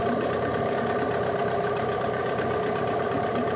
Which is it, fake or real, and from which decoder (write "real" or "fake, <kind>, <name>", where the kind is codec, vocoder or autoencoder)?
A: real